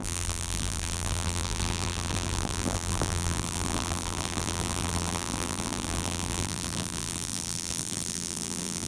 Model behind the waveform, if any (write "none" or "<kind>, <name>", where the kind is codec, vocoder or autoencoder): vocoder, BigVGAN v2